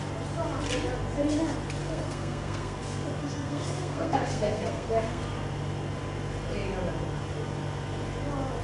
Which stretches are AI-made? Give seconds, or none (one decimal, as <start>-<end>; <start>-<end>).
1.8-2.8; 3.2-5.2